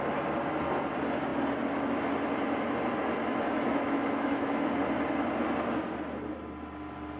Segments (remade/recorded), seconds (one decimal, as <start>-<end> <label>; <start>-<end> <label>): 0.0-3.3 recorded; 3.3-4.7 remade; 4.7-7.2 recorded